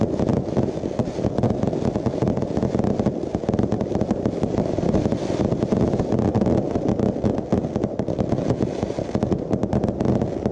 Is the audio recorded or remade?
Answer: recorded